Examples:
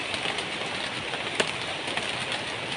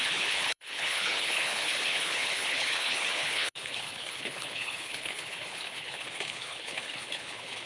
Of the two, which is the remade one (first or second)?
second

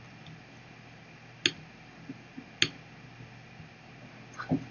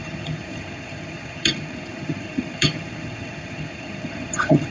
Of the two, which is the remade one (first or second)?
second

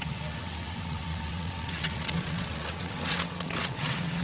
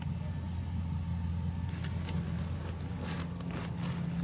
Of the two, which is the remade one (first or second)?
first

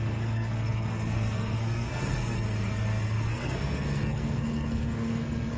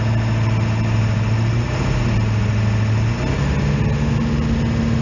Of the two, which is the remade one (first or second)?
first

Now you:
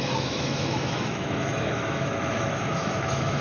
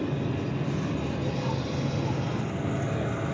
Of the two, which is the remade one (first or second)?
first